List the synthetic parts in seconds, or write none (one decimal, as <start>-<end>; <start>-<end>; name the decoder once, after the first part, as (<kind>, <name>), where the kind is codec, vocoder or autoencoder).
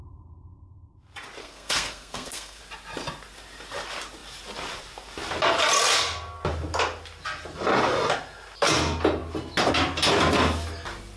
1.4-2.6 (codec, SNAC)